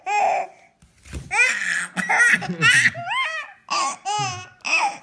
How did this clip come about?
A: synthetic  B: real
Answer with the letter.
B